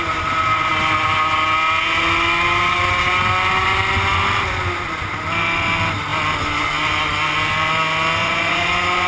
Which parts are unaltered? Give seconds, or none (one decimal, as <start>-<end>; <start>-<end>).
0.0-8.2; 8.7-9.1